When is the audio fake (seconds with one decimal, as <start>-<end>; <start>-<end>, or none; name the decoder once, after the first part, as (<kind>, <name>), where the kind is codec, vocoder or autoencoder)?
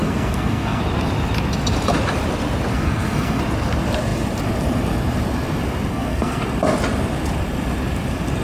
0.0-0.8 (codec, SNAC); 2.7-3.4; 5.9-6.4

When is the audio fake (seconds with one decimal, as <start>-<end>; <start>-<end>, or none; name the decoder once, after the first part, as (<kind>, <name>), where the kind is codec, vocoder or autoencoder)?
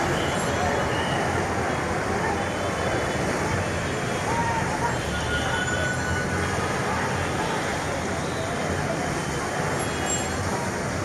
none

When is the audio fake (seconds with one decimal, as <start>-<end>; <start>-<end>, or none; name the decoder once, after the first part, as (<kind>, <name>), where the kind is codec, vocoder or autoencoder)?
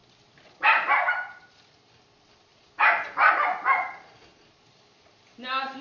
none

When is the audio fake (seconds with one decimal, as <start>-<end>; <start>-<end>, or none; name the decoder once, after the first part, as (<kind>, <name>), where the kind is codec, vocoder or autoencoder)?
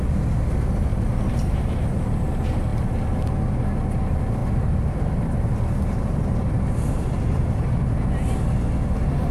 0.9-2.2 (vocoder, BigVGAN v2); 4.4-7.8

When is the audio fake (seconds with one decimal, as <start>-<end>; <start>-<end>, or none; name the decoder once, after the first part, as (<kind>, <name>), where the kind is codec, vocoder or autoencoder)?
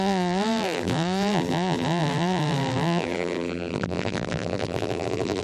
0.0-5.4 (vocoder, BigVGAN v2)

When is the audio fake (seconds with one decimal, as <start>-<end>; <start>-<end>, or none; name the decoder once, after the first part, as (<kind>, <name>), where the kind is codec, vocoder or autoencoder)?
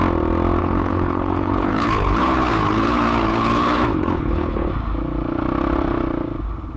0.6-4.7 (codec, HILCodec)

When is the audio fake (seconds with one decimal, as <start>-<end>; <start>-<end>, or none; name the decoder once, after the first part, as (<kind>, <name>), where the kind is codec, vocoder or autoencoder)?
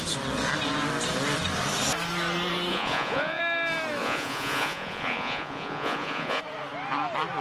2.7-3.4 (vocoder, Vocos); 4.0-6.4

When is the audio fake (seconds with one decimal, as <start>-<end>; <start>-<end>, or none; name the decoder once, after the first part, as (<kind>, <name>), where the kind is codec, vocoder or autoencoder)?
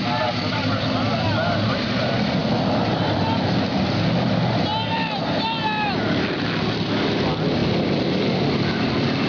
2.4-3.8 (vocoder, BigVGAN v2); 7.6-9.3